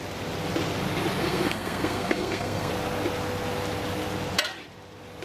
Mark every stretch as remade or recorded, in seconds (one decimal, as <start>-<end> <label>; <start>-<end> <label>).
0.0-1.2 recorded; 1.2-2.7 remade; 2.7-5.2 recorded